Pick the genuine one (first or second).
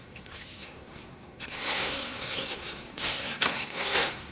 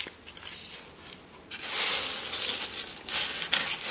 second